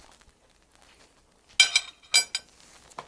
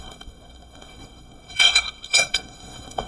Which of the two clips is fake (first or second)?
second